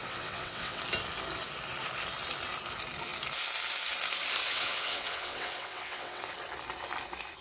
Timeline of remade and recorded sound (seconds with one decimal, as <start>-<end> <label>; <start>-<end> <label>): 0.0-0.8 remade; 0.8-4.4 recorded; 4.4-6.3 remade; 6.3-7.4 recorded